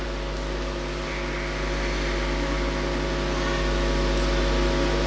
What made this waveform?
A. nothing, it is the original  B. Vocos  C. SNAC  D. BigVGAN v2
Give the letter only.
A